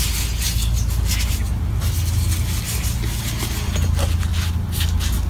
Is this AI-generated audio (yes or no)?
no